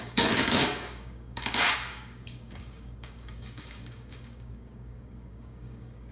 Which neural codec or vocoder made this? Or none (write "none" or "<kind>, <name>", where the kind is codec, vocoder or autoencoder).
codec, DAC